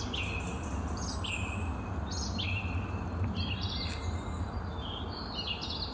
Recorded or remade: recorded